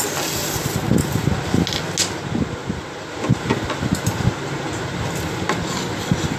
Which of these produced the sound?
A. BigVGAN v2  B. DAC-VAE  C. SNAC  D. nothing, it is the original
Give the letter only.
D